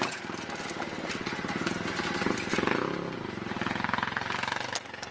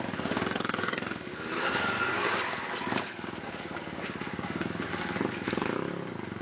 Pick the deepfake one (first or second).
second